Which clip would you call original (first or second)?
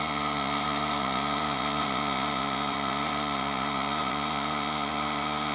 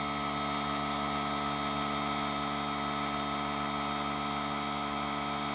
second